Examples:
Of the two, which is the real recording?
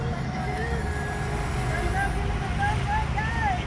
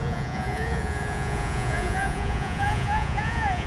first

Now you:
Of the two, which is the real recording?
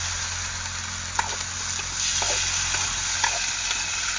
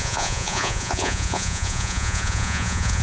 first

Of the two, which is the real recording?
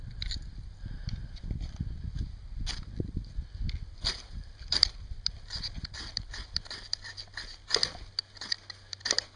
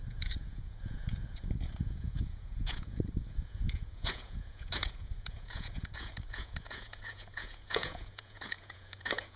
first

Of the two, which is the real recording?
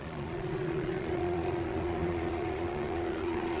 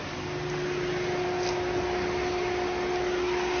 second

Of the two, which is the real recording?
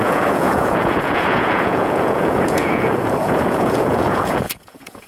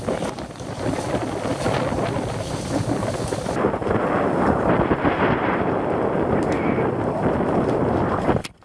second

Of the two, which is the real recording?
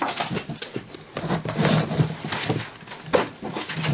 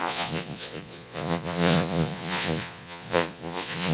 first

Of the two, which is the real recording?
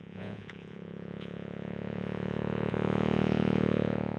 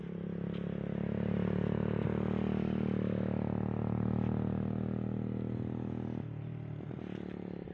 second